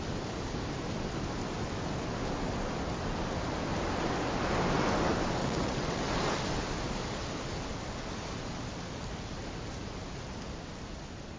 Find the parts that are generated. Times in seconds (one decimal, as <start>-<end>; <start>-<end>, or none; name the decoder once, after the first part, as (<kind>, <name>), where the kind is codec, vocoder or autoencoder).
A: 5.4-6.0 (vocoder, WaveNeXt)